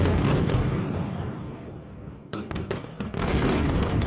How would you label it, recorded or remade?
remade